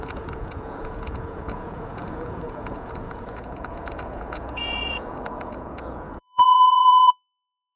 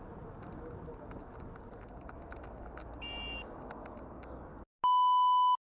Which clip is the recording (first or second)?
second